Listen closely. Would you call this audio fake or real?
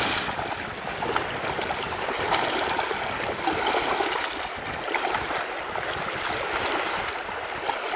real